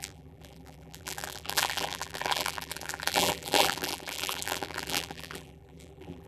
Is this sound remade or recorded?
remade